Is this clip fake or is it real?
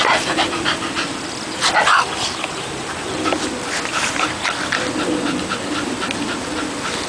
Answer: real